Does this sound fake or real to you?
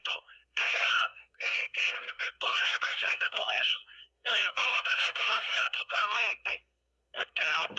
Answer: fake